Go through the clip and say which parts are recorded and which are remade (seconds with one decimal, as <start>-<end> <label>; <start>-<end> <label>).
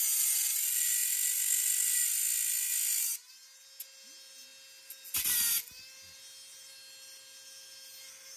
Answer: 0.0-8.4 recorded